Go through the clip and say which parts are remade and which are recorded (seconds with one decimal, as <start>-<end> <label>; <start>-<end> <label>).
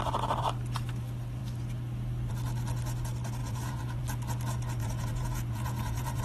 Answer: 0.0-3.4 recorded; 3.4-4.0 remade; 4.0-4.8 recorded; 4.8-6.2 remade